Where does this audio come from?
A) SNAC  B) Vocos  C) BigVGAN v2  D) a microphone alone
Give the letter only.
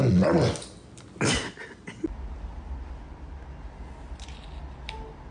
D